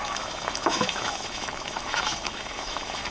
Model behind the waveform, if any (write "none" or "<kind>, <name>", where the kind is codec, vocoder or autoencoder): autoencoder, DAC-VAE